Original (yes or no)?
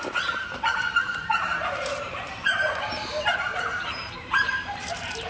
no